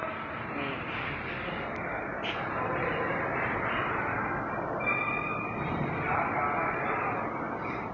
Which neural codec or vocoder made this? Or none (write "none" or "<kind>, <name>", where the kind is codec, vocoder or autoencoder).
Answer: none